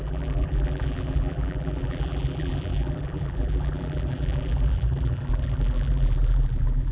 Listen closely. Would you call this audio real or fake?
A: fake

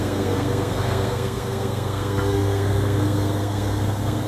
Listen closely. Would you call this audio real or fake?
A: fake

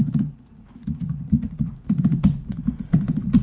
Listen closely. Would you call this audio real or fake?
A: fake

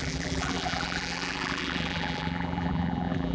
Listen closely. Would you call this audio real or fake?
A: fake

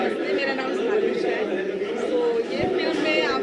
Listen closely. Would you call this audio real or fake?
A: real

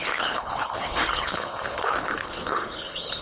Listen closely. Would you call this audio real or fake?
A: fake